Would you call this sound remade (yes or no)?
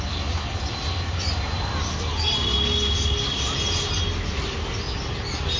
no